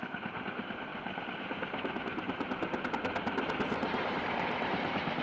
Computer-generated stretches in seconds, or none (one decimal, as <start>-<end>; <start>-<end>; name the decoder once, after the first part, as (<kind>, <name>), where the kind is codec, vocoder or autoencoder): none